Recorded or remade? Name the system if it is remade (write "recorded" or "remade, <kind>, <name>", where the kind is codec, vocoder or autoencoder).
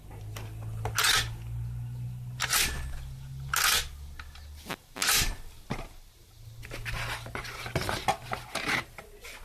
recorded